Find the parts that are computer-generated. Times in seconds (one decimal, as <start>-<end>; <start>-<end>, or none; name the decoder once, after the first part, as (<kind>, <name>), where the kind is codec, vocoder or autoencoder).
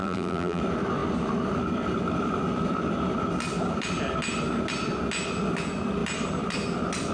0.0-0.6 (vocoder, BigVGAN v2)